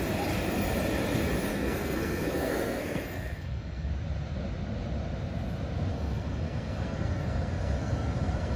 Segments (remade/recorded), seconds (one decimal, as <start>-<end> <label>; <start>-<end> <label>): 0.0-1.5 recorded; 1.5-3.9 remade; 3.9-5.9 recorded; 5.9-8.6 remade